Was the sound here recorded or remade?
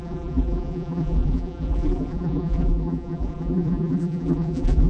remade